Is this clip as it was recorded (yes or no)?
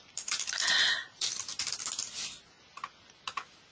yes